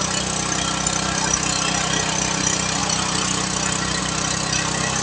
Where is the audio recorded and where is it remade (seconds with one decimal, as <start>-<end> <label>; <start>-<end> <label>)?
0.0-5.0 recorded